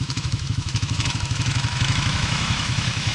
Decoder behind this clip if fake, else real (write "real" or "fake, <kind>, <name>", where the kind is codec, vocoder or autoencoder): fake, autoencoder, DAC-VAE